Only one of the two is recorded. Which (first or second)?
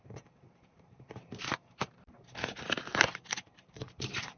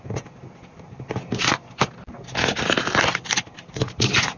second